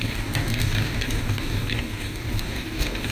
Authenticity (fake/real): fake